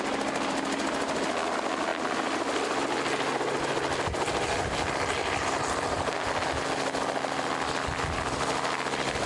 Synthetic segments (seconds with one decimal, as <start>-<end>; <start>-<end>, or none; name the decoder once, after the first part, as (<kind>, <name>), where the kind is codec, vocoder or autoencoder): 1.9-3.4 (vocoder, BigVGAN v2); 5.2-6.4